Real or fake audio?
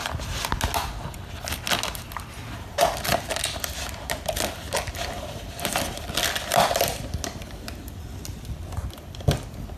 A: real